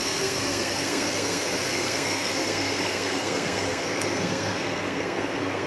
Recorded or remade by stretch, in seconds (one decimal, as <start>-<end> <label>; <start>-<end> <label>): 0.0-5.7 remade